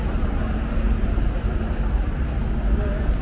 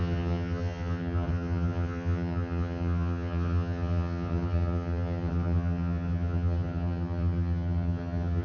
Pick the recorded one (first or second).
first